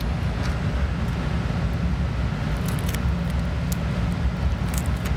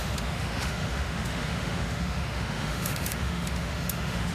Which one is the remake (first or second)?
second